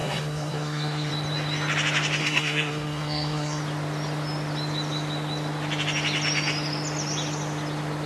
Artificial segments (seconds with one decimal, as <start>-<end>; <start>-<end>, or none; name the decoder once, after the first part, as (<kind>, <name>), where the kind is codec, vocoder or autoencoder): 0.0-1.1 (codec, SNAC); 2.2-3.6